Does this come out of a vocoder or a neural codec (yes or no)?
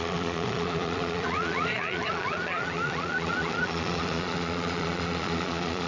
yes